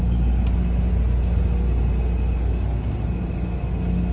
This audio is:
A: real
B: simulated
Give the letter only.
A